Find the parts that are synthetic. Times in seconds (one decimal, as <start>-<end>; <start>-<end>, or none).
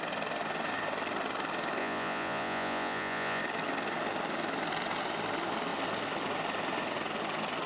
1.8-3.4